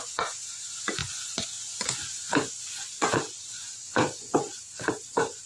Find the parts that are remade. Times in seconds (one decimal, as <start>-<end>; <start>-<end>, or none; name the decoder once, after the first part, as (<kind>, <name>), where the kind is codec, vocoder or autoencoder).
0.0-5.5 (vocoder, Vocos)

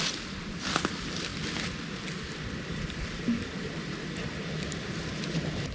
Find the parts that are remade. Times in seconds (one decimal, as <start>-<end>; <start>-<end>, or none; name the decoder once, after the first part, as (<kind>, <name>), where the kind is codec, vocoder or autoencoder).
0.0-1.3 (vocoder, BigVGAN v2); 3.8-5.7

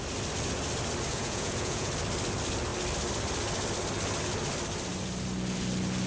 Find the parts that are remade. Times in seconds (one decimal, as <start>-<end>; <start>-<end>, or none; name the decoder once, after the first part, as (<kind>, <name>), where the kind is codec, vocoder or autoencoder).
1.1-1.9 (vocoder, Vocos)

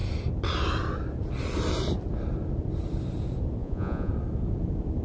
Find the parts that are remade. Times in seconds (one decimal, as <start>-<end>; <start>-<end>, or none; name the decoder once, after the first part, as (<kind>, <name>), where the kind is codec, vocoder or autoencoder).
3.6-4.1 (vocoder, Vocos)

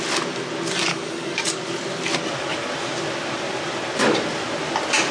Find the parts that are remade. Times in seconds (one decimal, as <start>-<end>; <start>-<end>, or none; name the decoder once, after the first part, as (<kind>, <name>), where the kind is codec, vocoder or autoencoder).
0.9-1.6 (codec, DAC)

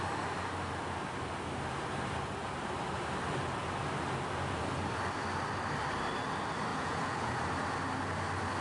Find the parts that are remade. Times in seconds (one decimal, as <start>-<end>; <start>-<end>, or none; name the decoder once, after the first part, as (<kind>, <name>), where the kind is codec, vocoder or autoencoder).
6.7-7.4 (vocoder, Vocos)